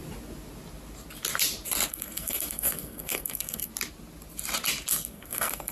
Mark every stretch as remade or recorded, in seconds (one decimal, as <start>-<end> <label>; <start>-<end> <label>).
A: 0.0-1.9 recorded; 1.9-3.7 remade; 3.7-4.9 recorded; 4.9-5.7 remade